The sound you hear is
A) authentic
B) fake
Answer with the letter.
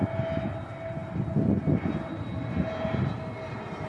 A